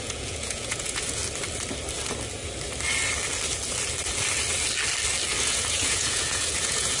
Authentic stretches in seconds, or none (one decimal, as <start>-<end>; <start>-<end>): 1.2-5.4